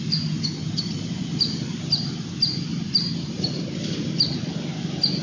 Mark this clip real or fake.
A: real